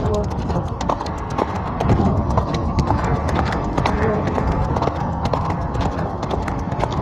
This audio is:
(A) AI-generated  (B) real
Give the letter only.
A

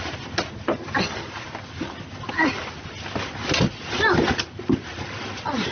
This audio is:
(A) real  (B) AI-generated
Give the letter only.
A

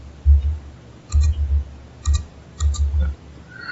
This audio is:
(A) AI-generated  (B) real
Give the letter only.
B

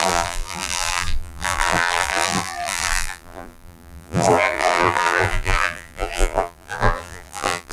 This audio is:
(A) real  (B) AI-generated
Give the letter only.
B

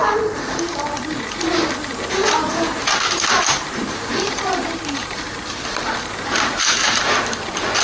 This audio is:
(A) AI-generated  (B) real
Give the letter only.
A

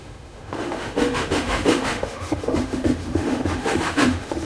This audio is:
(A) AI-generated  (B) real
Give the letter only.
A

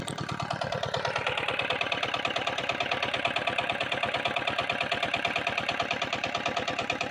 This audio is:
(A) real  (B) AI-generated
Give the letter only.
A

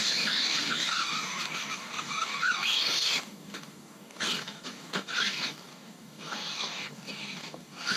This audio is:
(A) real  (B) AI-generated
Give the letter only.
B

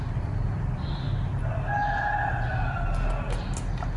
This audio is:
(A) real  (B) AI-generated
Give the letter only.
A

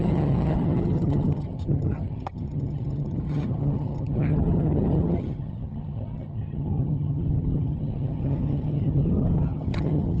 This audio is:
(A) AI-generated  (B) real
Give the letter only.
A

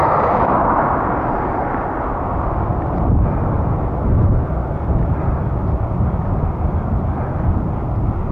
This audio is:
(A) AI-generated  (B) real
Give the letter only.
B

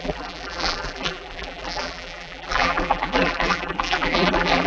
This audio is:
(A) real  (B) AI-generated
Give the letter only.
B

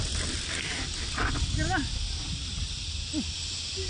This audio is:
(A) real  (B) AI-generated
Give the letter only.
A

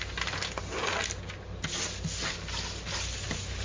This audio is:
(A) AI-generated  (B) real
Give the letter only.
B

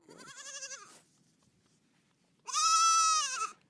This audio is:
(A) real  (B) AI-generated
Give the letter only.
A